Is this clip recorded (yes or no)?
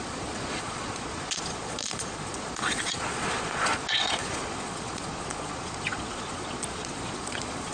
no